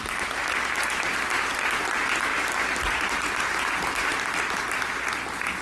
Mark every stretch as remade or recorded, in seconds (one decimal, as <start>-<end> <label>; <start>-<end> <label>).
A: 0.0-5.6 recorded